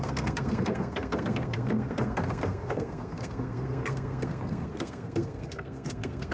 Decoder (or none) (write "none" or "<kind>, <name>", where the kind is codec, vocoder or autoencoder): codec, SNAC